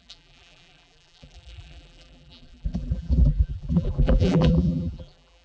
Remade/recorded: remade